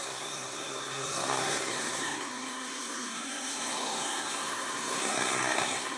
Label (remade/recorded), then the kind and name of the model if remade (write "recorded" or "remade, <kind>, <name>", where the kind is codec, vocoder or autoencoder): remade, codec, SNAC